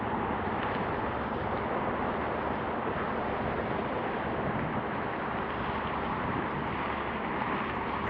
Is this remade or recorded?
recorded